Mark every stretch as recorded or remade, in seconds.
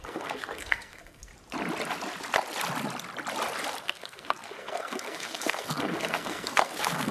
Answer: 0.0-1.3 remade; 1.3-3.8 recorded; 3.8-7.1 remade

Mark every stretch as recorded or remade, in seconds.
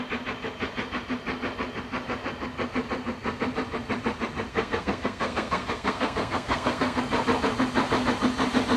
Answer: 0.0-4.5 recorded; 4.5-7.0 remade; 7.0-8.8 recorded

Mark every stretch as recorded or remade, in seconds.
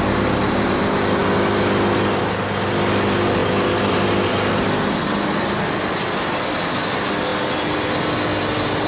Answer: 0.0-8.9 recorded